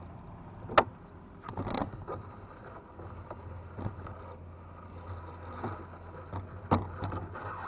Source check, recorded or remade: recorded